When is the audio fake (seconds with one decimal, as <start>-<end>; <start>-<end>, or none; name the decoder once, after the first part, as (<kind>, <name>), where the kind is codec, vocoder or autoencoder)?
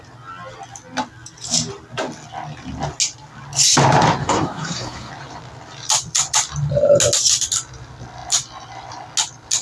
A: 4.2-5.1 (codec, SNAC)